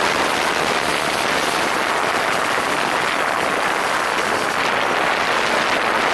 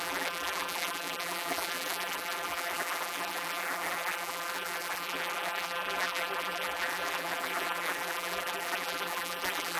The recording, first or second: first